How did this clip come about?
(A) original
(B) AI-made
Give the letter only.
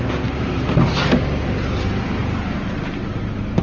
A